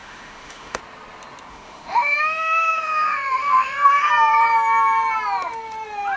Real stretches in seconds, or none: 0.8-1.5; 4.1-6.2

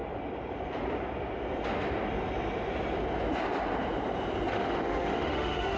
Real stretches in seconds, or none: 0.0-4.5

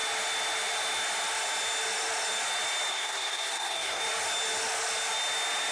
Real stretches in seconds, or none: 0.0-2.9; 4.0-5.7